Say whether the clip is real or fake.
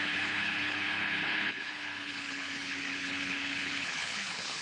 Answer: fake